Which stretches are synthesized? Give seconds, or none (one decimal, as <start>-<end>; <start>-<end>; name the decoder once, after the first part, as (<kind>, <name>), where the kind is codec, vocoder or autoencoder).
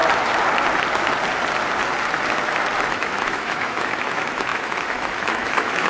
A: 2.9-5.9 (autoencoder, DAC-VAE)